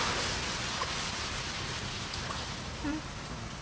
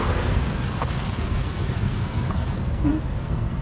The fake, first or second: second